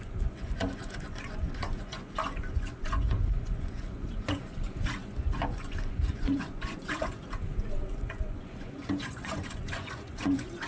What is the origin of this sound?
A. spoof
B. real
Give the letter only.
A